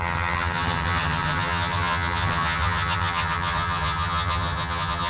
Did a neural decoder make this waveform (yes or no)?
yes